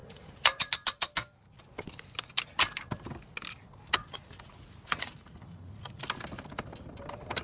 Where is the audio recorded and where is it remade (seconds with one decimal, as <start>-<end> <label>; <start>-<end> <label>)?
0.0-0.7 remade; 0.7-4.0 recorded; 4.0-6.0 remade; 6.0-7.4 recorded